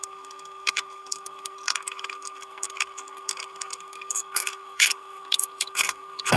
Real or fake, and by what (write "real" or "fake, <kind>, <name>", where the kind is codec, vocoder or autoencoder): fake, codec, SNAC